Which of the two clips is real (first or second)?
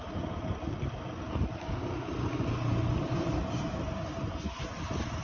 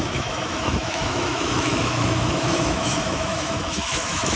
first